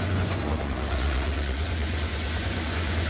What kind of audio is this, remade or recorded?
remade